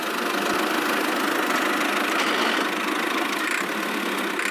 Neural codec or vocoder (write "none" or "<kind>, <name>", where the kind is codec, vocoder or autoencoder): none